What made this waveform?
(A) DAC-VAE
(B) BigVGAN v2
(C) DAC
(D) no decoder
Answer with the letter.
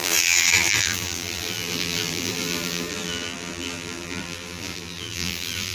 B